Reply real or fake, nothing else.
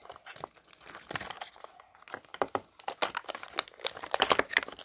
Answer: real